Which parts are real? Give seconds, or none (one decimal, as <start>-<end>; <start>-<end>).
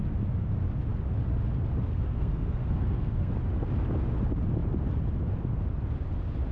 0.0-1.9; 3.3-6.5